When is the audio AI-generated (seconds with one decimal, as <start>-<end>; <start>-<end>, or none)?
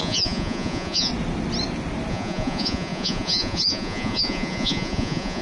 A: 0.0-1.1; 2.1-5.4